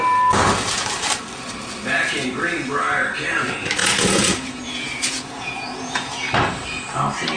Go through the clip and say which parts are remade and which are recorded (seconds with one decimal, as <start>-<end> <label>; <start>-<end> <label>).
0.0-3.8 recorded; 3.8-6.3 remade; 6.3-7.4 recorded